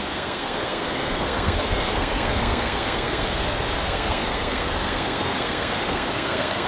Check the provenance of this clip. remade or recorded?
remade